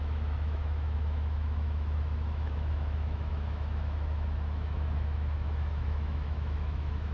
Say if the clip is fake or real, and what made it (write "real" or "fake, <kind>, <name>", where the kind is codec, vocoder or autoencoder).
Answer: fake, autoencoder, DAC-VAE